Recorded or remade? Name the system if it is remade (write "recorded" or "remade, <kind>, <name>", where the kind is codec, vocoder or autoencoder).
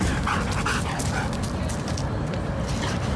recorded